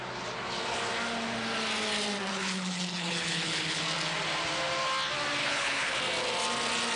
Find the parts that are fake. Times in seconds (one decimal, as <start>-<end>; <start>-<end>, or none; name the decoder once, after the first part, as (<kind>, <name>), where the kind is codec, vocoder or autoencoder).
2.3-3.8 (codec, HILCodec); 5.4-6.0